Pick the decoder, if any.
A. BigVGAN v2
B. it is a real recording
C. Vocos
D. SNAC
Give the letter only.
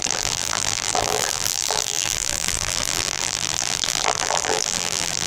A